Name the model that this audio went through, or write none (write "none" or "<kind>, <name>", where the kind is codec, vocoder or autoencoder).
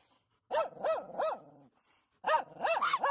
none